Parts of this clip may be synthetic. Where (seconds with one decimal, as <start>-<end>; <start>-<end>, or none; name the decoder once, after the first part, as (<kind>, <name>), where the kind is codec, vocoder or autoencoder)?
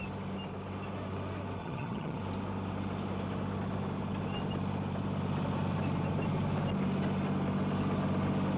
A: 1.6-2.2 (vocoder, HiFi-GAN)